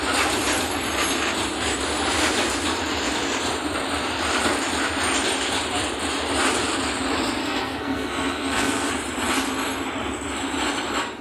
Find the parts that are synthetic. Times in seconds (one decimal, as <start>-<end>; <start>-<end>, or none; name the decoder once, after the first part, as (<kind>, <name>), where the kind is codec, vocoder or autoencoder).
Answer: 7.4-8.9 (codec, SNAC)